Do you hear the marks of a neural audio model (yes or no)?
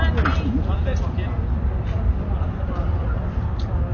no